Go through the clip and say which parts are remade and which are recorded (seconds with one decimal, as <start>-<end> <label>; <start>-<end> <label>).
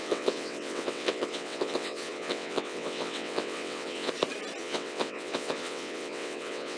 0.0-4.1 remade; 4.1-4.6 recorded; 4.6-6.8 remade